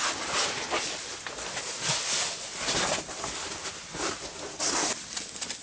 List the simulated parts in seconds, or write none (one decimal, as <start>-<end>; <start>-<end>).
none